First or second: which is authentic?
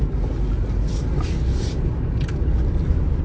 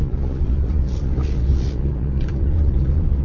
first